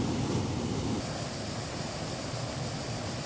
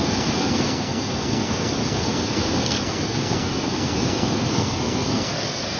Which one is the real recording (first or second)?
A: first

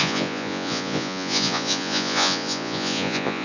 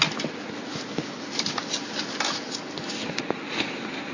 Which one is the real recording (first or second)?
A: second